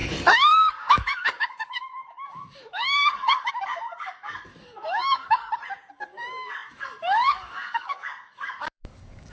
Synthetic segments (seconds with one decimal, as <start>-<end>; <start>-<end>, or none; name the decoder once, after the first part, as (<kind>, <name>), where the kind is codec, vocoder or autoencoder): 0.0-5.4 (codec, DAC); 5.9-9.3